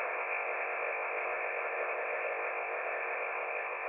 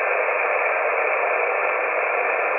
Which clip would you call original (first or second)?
second